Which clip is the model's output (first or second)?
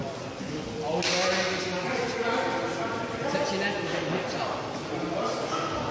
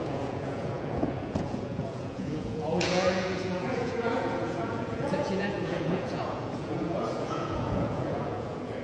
second